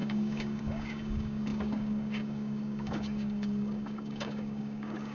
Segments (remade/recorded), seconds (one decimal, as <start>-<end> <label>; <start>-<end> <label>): 0.0-5.1 remade